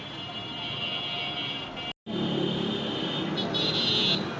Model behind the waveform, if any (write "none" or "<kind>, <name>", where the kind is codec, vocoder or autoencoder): none